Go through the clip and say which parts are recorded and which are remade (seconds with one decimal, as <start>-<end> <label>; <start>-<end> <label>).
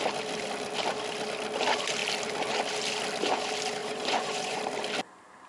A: 0.0-3.8 recorded; 3.8-4.6 remade; 4.6-5.5 recorded